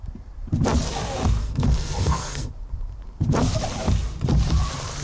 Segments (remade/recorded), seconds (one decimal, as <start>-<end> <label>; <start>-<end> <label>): 0.0-1.4 recorded; 1.4-2.5 remade; 2.5-5.0 recorded